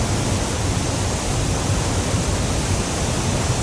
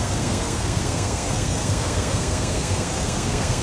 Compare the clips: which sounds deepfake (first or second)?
second